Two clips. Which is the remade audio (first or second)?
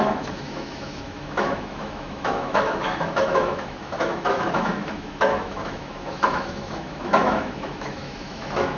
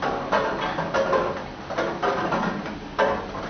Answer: first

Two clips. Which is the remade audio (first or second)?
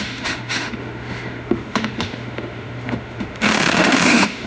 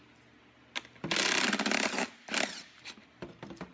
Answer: first